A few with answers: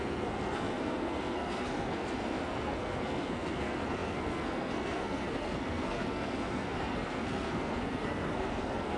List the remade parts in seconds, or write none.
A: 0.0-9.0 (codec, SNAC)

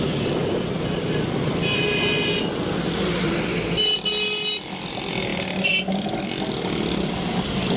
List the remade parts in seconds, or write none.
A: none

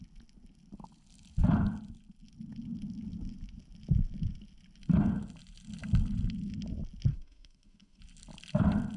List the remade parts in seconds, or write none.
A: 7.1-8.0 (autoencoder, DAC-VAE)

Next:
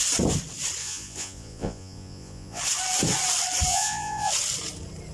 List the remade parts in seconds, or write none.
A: 0.8-2.6 (vocoder, Vocos); 3.7-4.3

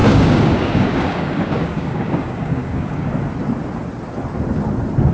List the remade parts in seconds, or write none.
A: 0.0-3.1 (codec, DAC)

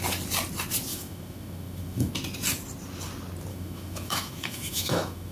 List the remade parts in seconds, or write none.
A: 0.9-2.1 (autoencoder, DAC-VAE); 3.5-5.3